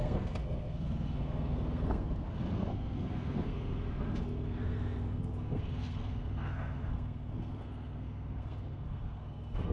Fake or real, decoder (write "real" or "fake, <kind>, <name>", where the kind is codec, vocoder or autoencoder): fake, codec, SNAC